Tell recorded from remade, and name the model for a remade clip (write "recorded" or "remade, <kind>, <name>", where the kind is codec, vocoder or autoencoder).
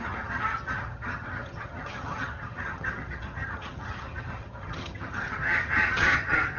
remade, vocoder, HiFi-GAN